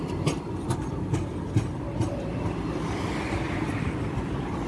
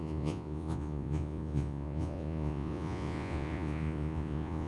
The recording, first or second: first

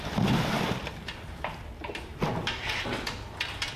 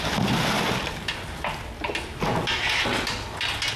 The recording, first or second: second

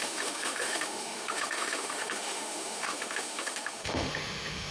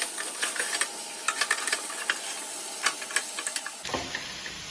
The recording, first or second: second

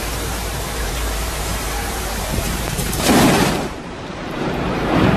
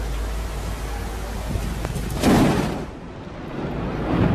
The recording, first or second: second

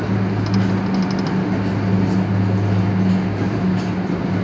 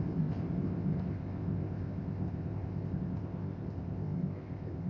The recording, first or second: first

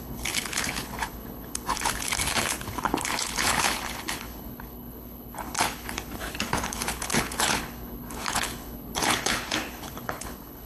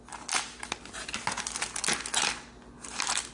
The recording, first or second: second